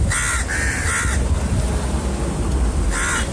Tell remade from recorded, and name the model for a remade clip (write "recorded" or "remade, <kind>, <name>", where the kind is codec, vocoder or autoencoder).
remade, vocoder, BigVGAN v2